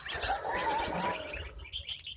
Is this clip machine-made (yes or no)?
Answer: no